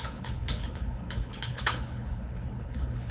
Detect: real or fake fake